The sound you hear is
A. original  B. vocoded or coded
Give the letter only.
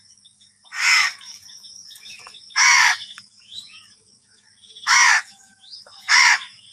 B